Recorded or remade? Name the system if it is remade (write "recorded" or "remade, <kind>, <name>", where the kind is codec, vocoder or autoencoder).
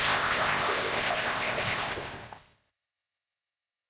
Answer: remade, codec, ZipCodec